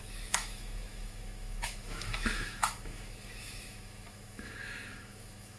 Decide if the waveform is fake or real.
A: fake